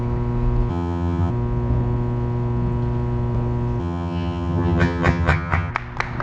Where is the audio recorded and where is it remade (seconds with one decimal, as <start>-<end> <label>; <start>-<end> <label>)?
0.0-0.7 recorded; 0.7-1.3 remade; 1.3-3.8 recorded; 3.8-5.7 remade; 5.7-6.2 recorded